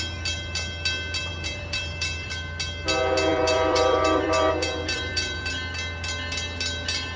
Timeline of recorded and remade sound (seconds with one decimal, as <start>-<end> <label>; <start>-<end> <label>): 0.0-1.3 recorded; 1.3-2.3 remade; 2.3-3.3 recorded; 3.3-5.5 remade; 5.5-7.2 recorded